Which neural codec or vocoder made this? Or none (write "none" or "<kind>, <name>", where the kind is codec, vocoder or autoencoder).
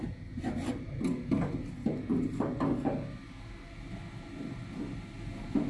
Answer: none